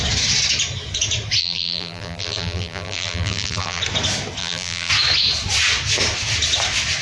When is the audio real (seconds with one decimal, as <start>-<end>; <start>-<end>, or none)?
0.0-1.4; 3.8-4.4; 4.9-7.0

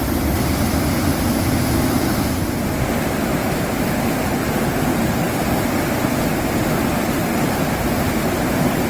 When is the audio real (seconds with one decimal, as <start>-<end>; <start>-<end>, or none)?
0.0-4.9; 5.6-8.9

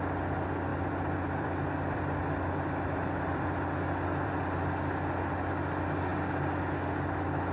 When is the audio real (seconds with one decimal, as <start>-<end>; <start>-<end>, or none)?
0.0-0.7; 4.3-6.1; 6.6-7.5

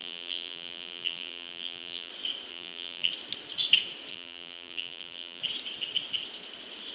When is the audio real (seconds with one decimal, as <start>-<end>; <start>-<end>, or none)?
2.1-2.5; 3.1-4.1; 5.4-6.9

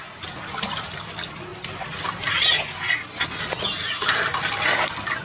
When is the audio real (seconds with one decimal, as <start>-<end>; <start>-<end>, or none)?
0.0-5.2

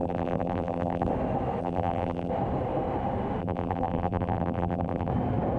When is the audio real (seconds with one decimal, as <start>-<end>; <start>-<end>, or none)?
1.1-1.6; 2.3-3.4; 5.1-5.6

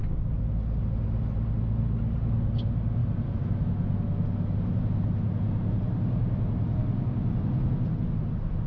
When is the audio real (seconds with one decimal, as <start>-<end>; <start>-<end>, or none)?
0.0-3.0; 3.7-8.7

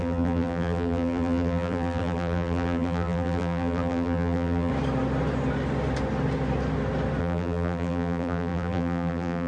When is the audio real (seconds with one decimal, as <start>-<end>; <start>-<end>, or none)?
4.7-7.2